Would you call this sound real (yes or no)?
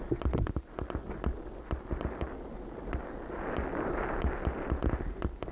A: yes